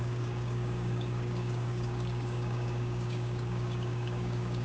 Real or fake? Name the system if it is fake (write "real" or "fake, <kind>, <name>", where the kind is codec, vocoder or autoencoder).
fake, codec, DAC